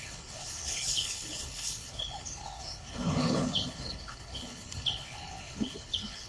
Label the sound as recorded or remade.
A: remade